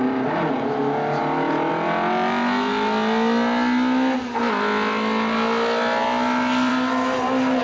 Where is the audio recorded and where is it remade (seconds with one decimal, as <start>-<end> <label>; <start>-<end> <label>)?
0.0-7.6 recorded